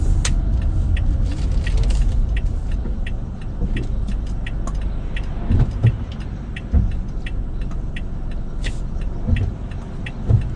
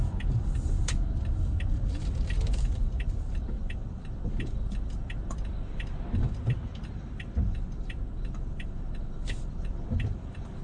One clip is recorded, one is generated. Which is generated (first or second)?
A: second